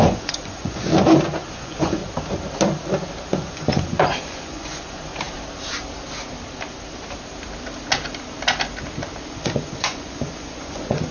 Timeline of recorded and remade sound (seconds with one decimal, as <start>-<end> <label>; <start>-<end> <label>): 0.0-0.9 remade; 0.9-1.5 recorded; 1.5-2.0 remade; 2.0-3.4 recorded; 3.4-5.1 remade; 5.1-9.3 recorded; 9.3-11.1 remade

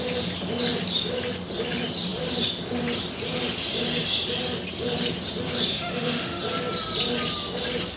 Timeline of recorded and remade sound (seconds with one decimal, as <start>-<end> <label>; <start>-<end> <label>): 0.0-5.7 recorded; 5.7-6.4 remade; 6.4-8.0 recorded

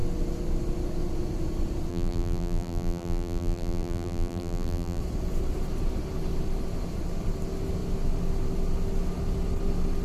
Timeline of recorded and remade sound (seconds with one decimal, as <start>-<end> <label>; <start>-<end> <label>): 0.0-1.9 recorded; 1.9-5.0 remade; 5.0-10.0 recorded

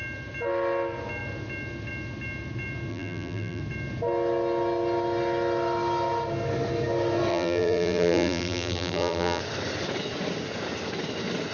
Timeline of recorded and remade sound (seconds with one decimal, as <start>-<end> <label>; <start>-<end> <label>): 0.0-2.9 recorded; 2.9-3.6 remade; 3.6-7.3 recorded; 7.3-9.4 remade; 9.4-11.5 recorded

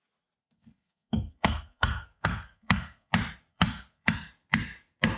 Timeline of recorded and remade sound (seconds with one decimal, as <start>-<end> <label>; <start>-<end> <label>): 0.0-0.4 recorded; 0.4-3.1 remade; 3.1-3.5 recorded; 3.5-4.3 remade; 4.3-5.2 recorded

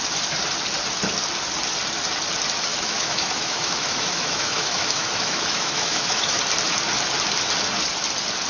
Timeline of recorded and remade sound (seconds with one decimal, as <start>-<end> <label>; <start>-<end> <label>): 0.0-2.7 recorded; 2.7-6.4 remade; 6.4-8.5 recorded

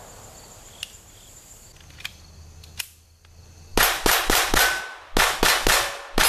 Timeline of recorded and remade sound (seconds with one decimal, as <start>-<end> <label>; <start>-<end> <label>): 0.0-6.3 recorded

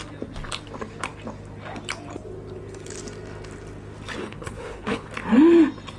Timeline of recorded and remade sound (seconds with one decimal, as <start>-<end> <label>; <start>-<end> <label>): 0.0-4.2 recorded; 4.2-5.1 remade; 5.1-6.0 recorded